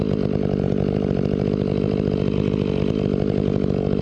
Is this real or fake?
real